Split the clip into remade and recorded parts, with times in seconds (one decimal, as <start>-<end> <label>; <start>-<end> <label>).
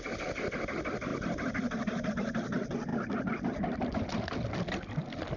0.0-5.4 recorded